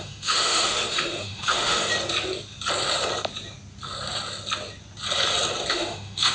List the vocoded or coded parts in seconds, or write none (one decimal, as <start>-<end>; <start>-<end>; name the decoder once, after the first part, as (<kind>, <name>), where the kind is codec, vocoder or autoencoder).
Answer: 0.0-1.9 (autoencoder, DAC-VAE); 5.7-6.3